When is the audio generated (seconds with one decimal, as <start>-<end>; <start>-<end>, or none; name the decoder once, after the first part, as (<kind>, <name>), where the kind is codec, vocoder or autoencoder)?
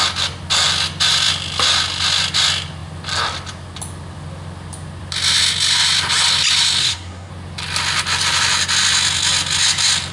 6.8-7.3 (codec, SNAC)